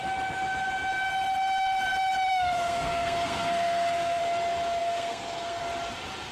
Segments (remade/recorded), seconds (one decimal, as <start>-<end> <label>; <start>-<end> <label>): 0.0-2.3 recorded; 2.3-4.2 remade; 4.2-4.8 recorded; 4.8-5.6 remade; 5.6-6.3 recorded